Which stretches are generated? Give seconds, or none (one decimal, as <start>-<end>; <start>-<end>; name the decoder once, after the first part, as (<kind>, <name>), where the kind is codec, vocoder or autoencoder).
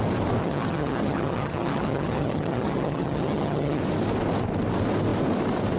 0.4-3.8 (vocoder, HiFi-GAN)